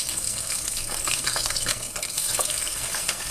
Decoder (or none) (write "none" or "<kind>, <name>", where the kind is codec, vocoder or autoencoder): codec, SNAC